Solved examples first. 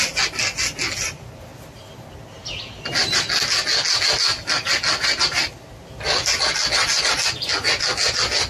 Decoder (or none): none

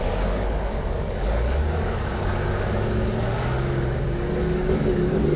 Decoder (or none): codec, DAC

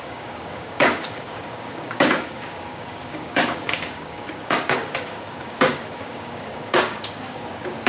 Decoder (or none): codec, DAC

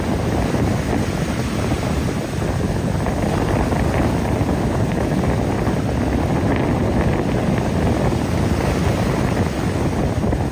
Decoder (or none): none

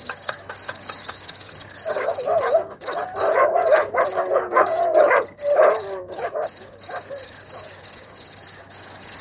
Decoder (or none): codec, DAC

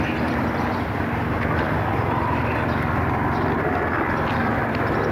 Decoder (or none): none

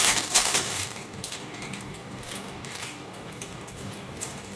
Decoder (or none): codec, DAC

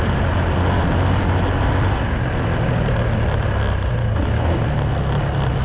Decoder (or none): none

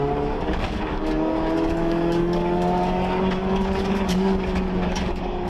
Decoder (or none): codec, DAC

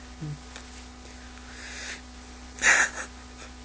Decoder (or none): none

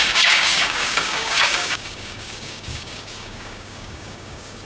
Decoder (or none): codec, DAC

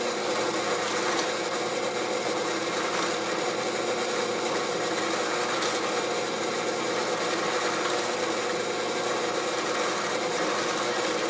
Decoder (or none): none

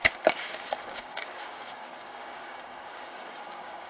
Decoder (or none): codec, DAC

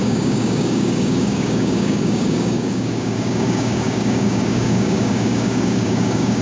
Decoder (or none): codec, DAC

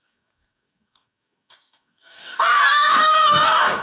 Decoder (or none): codec, DAC